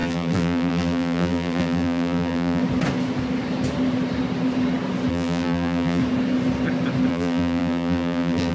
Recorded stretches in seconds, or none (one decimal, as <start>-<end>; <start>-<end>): 2.6-5.1; 6.0-7.1

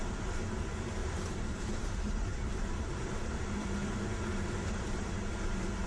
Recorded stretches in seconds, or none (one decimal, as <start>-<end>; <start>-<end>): none

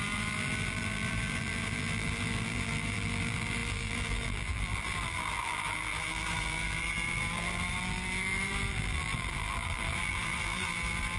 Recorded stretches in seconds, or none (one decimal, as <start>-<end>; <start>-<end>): none